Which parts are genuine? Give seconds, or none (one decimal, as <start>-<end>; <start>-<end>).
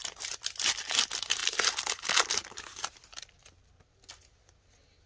0.0-5.1